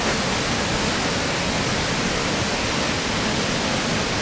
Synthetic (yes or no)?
no